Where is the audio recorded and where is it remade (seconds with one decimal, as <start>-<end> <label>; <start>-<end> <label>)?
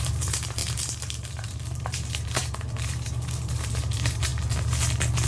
0.0-4.3 remade; 4.3-5.3 recorded